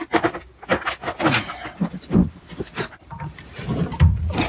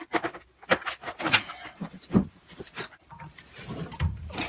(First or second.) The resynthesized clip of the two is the second